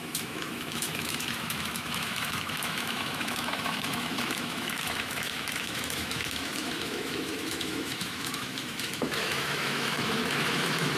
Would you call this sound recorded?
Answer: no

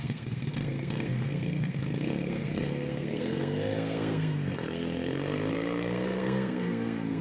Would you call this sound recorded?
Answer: no